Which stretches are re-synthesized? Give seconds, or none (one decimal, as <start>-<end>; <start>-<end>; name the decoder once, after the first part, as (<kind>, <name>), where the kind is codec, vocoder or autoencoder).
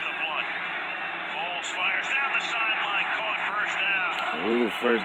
1.4-5.0 (vocoder, BigVGAN v2)